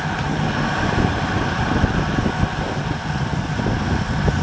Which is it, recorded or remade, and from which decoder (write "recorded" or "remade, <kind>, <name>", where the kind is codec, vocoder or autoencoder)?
recorded